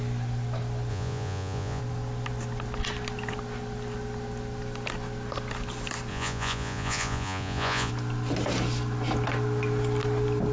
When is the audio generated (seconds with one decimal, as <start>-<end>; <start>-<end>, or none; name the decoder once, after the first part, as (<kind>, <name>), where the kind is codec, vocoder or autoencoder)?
0.9-1.8 (vocoder, Vocos); 6.1-7.9